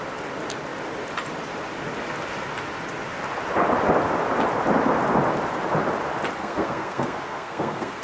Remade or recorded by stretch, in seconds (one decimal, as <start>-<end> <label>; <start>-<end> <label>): 0.0-6.4 recorded; 6.4-8.0 remade